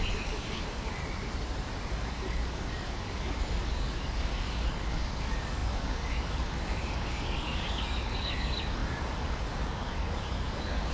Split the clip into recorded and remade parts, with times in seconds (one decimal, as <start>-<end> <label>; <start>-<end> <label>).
0.0-1.0 remade; 1.0-1.9 recorded; 1.9-10.9 remade